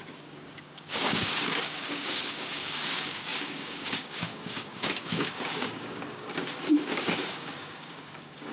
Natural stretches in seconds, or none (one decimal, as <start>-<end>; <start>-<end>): none